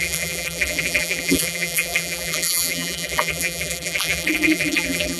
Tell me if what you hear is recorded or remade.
remade